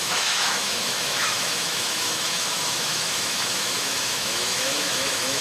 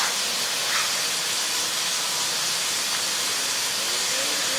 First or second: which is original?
second